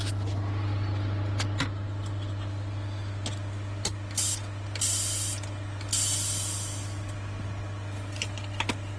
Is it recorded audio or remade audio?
recorded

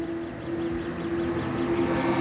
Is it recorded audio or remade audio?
recorded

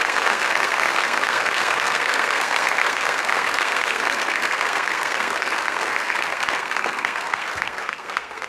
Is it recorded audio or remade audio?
remade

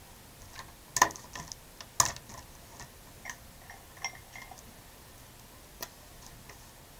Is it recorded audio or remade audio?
recorded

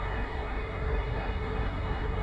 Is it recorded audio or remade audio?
remade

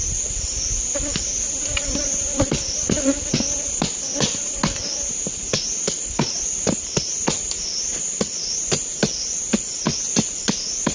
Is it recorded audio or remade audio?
recorded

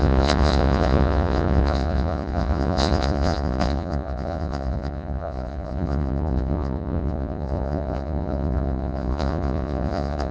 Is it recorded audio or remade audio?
remade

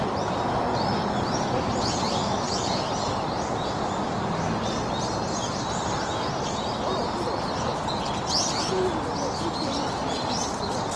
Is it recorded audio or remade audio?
recorded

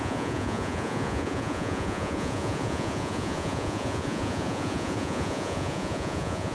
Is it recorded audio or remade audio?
remade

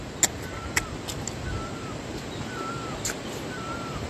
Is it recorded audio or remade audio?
recorded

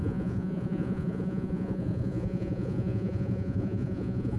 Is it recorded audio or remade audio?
remade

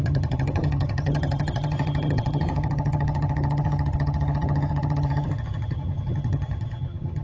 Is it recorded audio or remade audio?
remade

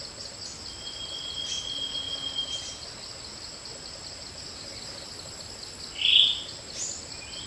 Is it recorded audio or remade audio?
recorded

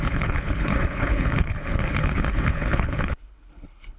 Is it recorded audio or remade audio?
remade